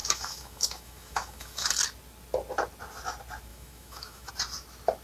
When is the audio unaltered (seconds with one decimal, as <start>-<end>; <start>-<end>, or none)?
1.7-3.5; 4.3-5.0